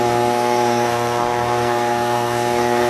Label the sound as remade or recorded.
remade